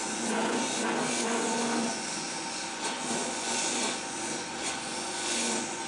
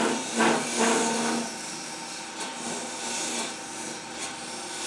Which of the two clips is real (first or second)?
second